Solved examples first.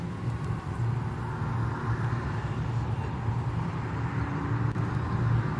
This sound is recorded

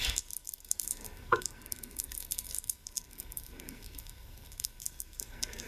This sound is remade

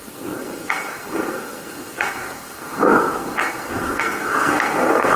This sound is remade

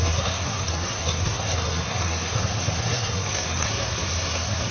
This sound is remade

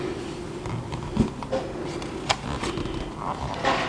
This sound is recorded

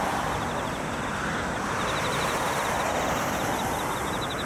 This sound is recorded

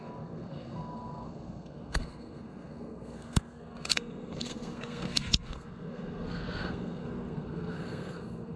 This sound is remade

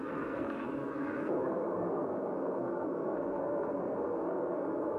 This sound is remade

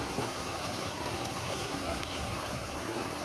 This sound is remade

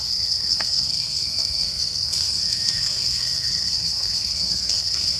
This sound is remade